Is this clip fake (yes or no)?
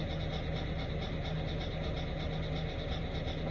no